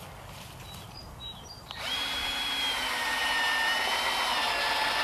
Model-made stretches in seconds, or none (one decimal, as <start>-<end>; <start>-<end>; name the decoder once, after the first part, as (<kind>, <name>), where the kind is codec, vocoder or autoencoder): 1.0-4.0 (vocoder, BigVGAN v2)

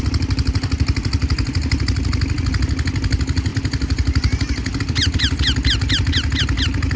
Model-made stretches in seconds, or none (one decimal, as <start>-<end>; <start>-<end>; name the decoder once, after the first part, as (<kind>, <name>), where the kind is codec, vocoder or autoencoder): 1.2-2.5 (vocoder, BigVGAN v2); 3.5-4.8

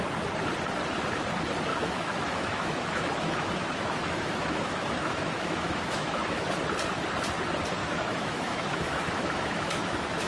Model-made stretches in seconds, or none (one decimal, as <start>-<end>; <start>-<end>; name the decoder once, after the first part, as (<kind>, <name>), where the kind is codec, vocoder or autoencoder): 1.7-6.5 (autoencoder, DAC-VAE); 7.8-10.3

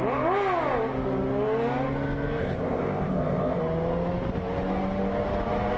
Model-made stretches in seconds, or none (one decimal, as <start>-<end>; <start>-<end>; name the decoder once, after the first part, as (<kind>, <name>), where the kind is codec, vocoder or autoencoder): 2.4-3.6 (codec, ZipCodec)